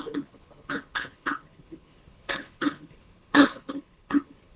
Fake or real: fake